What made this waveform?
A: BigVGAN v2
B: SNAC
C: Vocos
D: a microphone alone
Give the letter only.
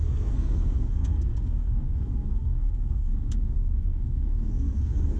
B